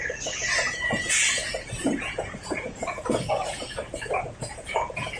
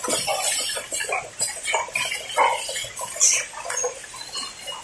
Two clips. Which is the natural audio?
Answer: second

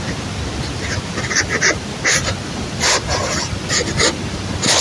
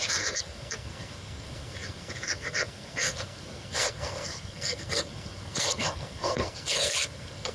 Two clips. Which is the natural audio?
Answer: first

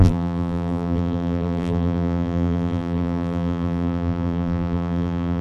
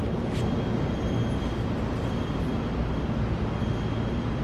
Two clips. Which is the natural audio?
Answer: second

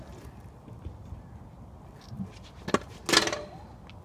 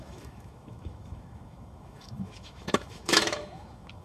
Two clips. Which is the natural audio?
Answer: first